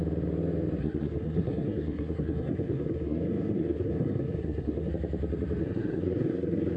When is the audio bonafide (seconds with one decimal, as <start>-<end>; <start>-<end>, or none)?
0.0-0.8; 4.9-5.6